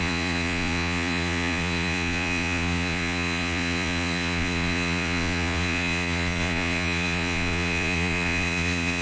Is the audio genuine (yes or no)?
no